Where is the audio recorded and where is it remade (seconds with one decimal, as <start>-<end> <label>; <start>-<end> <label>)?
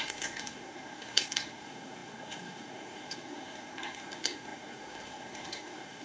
0.0-6.0 remade